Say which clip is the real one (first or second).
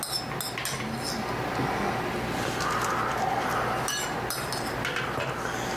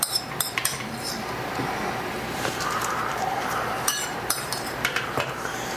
first